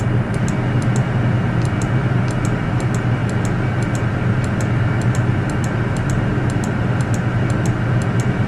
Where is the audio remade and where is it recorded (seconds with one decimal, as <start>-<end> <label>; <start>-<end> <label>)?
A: 0.0-8.5 recorded